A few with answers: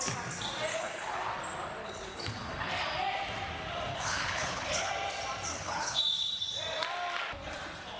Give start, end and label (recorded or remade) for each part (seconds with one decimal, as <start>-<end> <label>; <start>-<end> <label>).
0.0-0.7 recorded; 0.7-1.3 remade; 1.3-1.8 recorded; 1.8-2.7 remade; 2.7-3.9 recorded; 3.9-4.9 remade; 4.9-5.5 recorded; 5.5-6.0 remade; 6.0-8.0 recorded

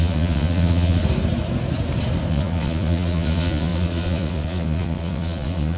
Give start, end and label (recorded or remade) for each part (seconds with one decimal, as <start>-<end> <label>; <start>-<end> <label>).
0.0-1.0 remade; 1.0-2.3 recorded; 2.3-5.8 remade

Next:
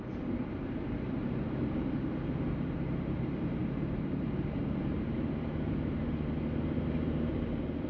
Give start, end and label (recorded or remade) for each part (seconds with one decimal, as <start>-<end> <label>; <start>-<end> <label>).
0.0-7.9 remade